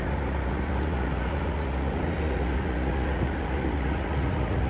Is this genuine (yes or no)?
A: no